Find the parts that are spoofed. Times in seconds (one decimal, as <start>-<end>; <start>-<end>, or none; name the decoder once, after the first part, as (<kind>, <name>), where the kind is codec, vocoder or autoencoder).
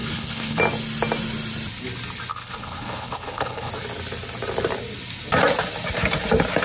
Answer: 0.0-0.6 (codec, HILCodec); 2.3-3.7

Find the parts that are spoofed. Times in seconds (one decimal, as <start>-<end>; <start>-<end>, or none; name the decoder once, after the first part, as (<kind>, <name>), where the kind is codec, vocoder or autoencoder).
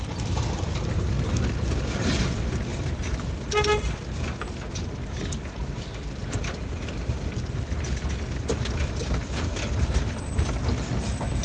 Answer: none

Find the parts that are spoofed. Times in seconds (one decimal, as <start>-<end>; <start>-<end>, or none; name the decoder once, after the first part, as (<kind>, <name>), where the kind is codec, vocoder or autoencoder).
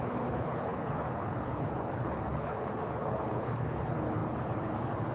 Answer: 0.0-5.1 (codec, HILCodec)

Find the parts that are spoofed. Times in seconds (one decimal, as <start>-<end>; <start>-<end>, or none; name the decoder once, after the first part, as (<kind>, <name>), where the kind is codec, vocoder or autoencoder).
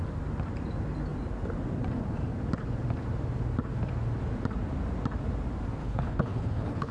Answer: 5.8-6.9 (codec, HILCodec)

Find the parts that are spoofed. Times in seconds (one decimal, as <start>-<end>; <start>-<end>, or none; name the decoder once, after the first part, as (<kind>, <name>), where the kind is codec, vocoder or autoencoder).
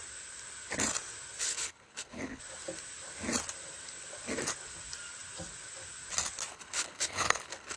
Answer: 1.4-2.4 (codec, HILCodec); 6.5-7.8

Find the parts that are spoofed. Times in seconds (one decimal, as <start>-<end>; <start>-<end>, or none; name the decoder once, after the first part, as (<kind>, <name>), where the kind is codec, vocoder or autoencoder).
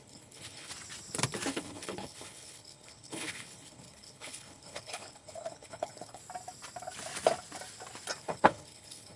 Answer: 0.0-0.7 (codec, HILCodec); 1.5-6.2; 8.2-9.2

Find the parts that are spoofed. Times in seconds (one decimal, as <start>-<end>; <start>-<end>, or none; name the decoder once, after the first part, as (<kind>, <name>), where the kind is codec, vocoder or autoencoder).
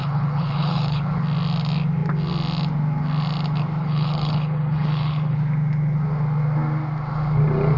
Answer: 0.0-1.1 (codec, HILCodec); 3.8-5.4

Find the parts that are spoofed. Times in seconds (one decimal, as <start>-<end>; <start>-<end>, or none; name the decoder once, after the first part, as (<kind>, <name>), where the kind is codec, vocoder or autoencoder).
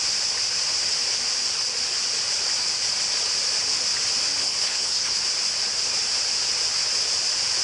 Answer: 4.4-5.2 (codec, HILCodec)